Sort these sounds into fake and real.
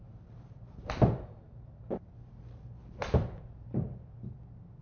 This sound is real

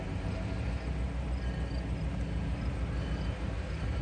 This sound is real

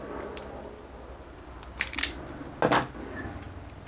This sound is real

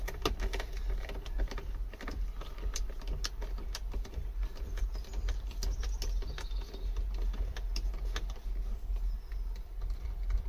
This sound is real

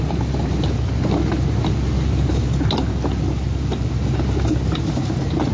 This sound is real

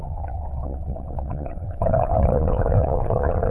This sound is fake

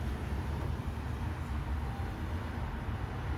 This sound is real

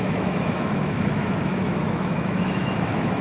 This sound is fake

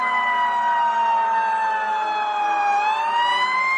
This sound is real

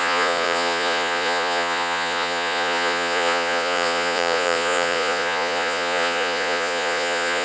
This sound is fake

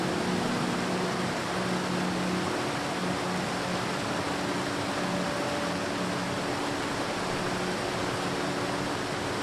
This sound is real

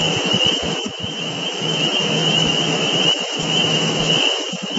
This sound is fake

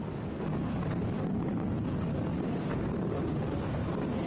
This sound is real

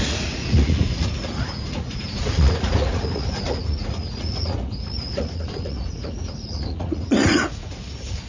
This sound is fake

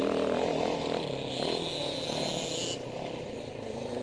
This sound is real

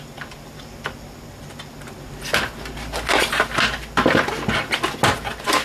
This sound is real